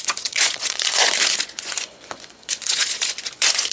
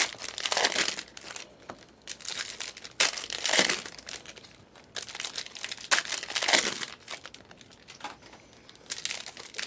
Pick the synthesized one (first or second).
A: first